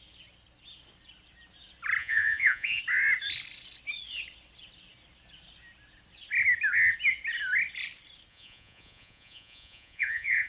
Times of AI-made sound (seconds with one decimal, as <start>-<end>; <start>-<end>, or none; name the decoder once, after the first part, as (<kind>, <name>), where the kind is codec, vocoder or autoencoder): 2.0-2.8 (vocoder, Vocos); 8.3-10.5